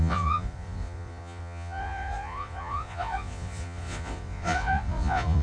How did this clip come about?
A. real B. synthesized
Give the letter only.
B